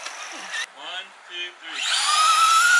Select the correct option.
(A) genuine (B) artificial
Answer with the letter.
A